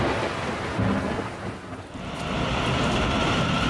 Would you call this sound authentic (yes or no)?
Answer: yes